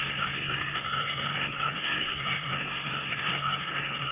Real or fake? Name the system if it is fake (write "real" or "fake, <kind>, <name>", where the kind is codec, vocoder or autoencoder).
fake, codec, SNAC